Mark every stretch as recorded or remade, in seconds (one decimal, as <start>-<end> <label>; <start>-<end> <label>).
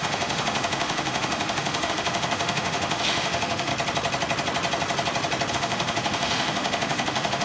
0.0-3.7 remade; 3.7-5.5 recorded; 5.5-7.4 remade